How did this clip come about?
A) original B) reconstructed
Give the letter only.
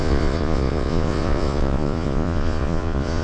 B